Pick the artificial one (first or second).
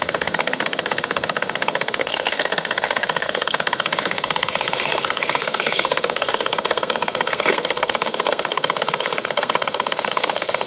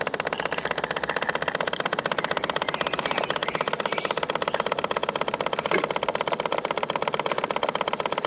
first